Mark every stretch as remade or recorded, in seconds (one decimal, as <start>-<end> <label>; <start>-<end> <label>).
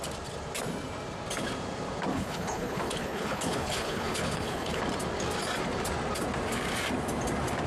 0.0-2.1 recorded; 2.1-4.8 remade; 4.8-7.7 recorded